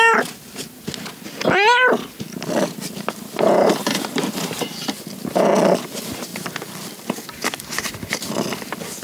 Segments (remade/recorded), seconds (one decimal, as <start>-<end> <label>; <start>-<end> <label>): 0.0-9.0 recorded